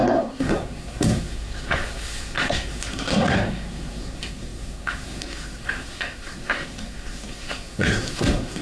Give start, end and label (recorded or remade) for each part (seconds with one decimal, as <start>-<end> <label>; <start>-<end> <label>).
0.0-8.6 remade